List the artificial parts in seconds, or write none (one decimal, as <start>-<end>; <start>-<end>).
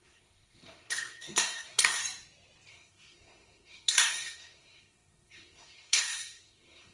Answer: 0.0-2.0; 2.7-6.9